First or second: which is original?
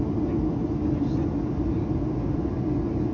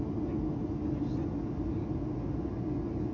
second